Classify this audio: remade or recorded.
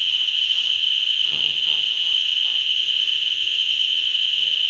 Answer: remade